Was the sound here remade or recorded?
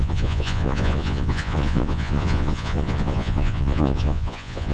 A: remade